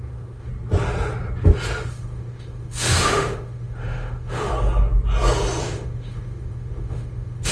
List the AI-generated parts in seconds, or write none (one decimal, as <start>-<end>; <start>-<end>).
0.0-0.5; 1.9-4.5; 5.6-7.5